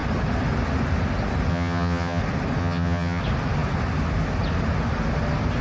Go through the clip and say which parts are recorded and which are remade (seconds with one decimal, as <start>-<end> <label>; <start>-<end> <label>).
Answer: 0.0-1.5 recorded; 1.5-2.2 remade; 2.2-2.6 recorded; 2.6-3.2 remade; 3.2-5.6 recorded